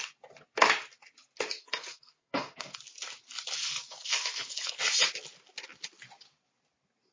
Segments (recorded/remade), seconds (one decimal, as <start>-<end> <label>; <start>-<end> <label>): 0.0-1.6 recorded; 1.6-2.8 remade; 2.8-3.6 recorded; 3.6-4.8 remade; 4.8-7.1 recorded